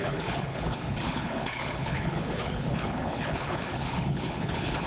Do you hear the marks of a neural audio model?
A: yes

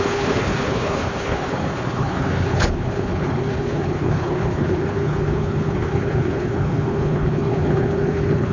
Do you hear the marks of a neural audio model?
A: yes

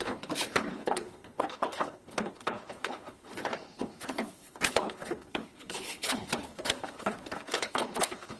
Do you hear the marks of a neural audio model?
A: yes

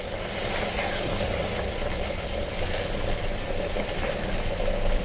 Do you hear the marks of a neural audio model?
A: no